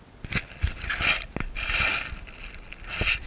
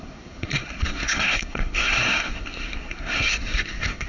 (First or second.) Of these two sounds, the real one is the first